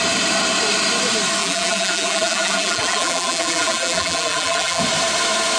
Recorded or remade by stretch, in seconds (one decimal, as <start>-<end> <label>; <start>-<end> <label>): 0.0-1.4 recorded; 1.4-4.8 remade; 4.8-5.6 recorded